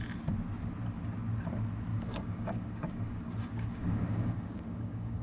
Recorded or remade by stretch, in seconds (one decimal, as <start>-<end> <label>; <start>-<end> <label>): 0.0-1.9 recorded; 1.9-5.2 remade